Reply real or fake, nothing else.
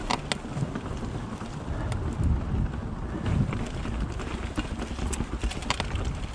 real